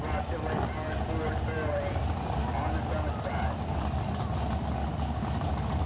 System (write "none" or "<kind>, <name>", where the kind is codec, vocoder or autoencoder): none